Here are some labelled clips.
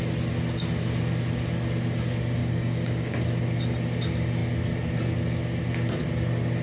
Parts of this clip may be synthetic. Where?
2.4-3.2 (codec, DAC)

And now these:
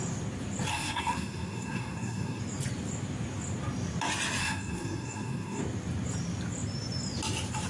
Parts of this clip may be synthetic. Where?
0.7-2.4 (codec, SNAC); 4.4-5.6

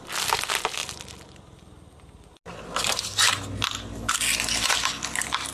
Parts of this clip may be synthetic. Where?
none